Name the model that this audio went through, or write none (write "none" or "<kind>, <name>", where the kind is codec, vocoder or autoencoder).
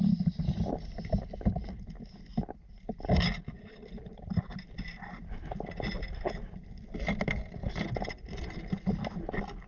none